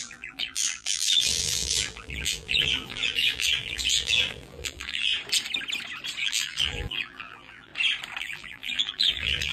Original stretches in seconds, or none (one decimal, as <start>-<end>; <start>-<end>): 5.1-6.2; 7.7-8.2